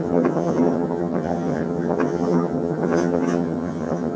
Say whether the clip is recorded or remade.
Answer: remade